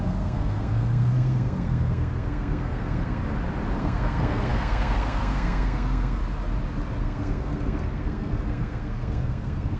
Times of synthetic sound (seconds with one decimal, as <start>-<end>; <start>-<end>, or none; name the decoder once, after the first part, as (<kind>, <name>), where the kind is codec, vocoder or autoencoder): 0.0-3.2 (codec, SNAC); 3.8-6.2; 7.0-9.8